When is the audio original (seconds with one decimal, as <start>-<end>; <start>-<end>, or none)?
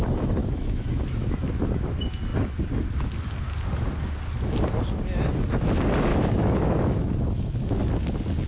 0.0-0.4; 1.6-6.1; 7.8-8.5